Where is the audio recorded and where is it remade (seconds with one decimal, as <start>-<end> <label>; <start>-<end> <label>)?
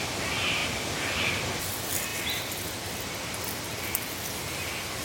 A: 0.0-5.0 recorded